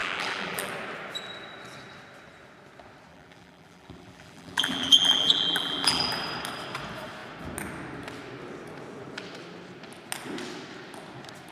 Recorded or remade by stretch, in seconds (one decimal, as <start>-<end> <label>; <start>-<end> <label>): 0.0-0.7 remade; 0.7-3.1 recorded; 3.1-6.1 remade; 6.1-11.5 recorded